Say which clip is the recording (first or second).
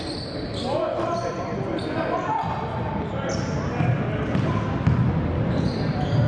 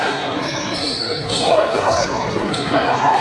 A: first